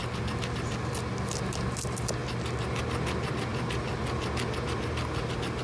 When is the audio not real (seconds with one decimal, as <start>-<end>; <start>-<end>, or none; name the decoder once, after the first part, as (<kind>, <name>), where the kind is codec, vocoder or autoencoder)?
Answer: none